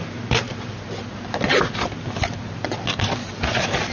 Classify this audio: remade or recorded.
recorded